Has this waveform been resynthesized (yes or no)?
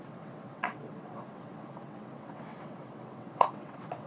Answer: yes